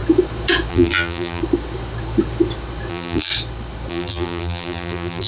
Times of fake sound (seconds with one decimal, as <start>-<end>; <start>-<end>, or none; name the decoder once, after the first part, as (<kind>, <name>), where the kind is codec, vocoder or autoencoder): 0.7-1.4 (vocoder, BigVGAN v2); 2.9-3.3; 3.9-5.3